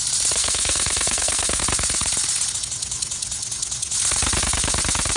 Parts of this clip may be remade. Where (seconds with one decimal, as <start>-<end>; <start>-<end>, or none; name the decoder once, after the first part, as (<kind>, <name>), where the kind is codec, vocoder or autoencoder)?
0.4-1.6 (codec, SNAC)